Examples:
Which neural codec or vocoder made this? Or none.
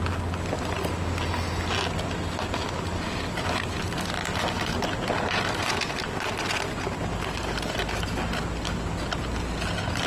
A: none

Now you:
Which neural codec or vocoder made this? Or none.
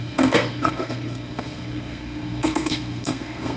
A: codec, SNAC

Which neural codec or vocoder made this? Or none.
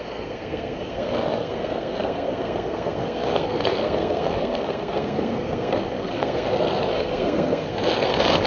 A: codec, SNAC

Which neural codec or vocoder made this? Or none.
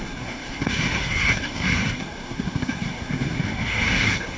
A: codec, SNAC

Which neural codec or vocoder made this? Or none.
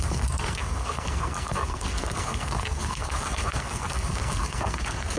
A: codec, SNAC